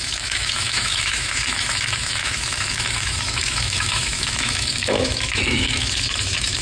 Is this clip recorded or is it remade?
remade